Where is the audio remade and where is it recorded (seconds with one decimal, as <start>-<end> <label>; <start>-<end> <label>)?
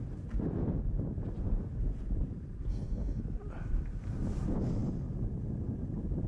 0.0-2.7 recorded; 2.7-3.2 remade; 3.2-6.3 recorded